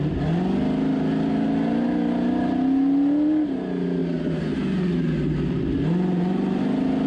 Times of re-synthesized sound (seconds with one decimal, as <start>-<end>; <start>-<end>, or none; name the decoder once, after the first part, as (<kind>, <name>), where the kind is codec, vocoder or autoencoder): none